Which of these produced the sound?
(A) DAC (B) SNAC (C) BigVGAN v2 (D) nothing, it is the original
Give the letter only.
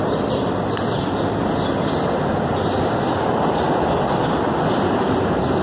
D